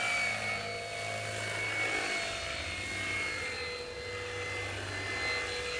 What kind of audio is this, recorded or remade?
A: recorded